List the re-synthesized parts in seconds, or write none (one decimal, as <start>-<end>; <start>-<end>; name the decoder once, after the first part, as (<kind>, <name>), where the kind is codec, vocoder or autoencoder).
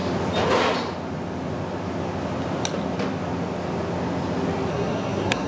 4.7-5.5 (codec, SNAC)